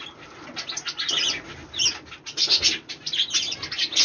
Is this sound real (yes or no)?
yes